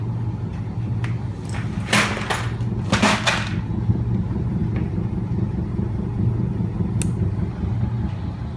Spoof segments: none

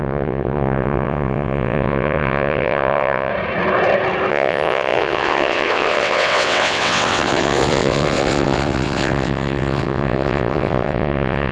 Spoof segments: 0.0-3.3 (vocoder, WaveNeXt); 4.3-11.5

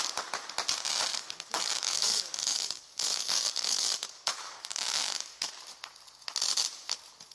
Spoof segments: 1.1-5.5 (codec, DAC)

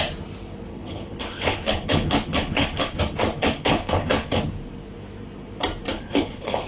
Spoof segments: 0.7-3.0 (codec, HILCodec); 3.4-4.4; 5.9-6.7

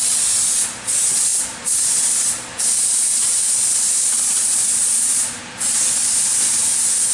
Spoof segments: 1.3-5.4 (vocoder, BigVGAN v2); 6.0-7.1

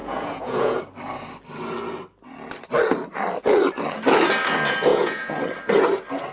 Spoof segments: 0.0-0.8 (vocoder, Vocos); 4.9-5.4

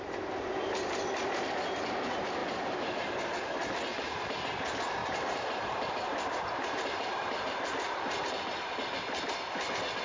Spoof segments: 2.4-3.5 (vocoder, BigVGAN v2); 3.9-4.5; 5.0-7.6

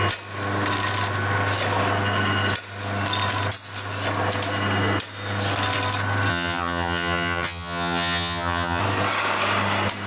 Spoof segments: 6.3-8.8 (vocoder, HiFi-GAN)